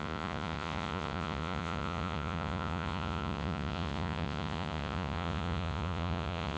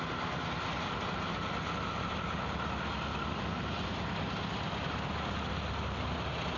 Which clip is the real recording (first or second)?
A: second